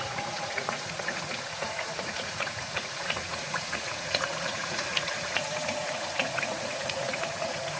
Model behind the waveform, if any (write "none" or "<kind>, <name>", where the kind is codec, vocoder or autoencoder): vocoder, Vocos